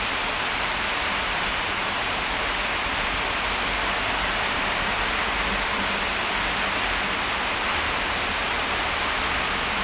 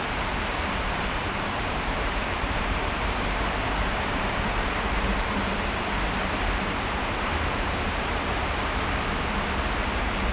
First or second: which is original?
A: first